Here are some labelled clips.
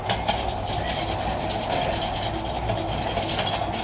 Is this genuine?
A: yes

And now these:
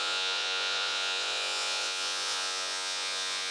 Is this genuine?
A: no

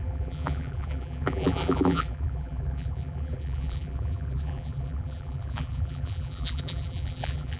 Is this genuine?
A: no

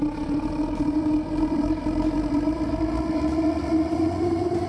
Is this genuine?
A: no